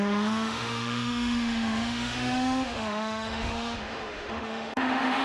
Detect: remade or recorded remade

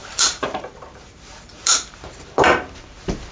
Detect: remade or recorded remade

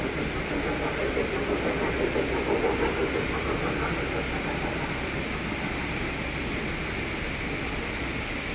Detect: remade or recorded recorded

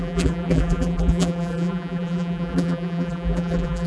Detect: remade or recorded remade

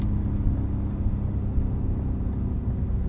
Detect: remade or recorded recorded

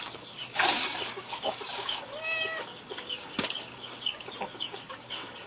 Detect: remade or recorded remade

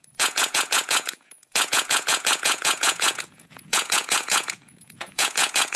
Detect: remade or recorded remade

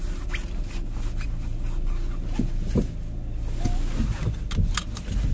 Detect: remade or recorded recorded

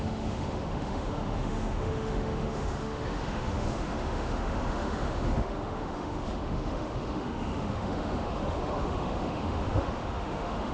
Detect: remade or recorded remade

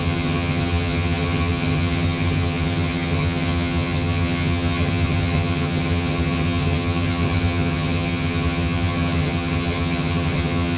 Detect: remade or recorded remade